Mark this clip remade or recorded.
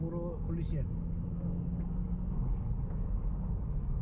recorded